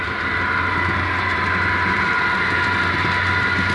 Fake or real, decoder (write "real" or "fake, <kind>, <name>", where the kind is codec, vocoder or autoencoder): real